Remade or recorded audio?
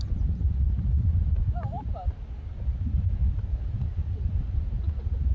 recorded